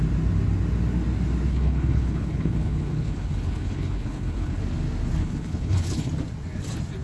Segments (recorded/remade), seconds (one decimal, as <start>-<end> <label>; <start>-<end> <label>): 0.0-1.5 recorded; 1.5-4.6 remade; 4.6-5.2 recorded; 5.2-6.1 remade; 6.1-7.0 recorded